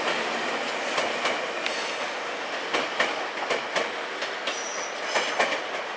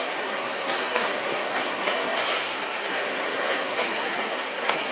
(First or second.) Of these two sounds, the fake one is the second